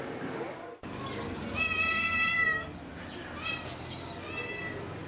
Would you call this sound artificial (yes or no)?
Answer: no